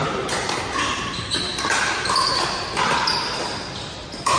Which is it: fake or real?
real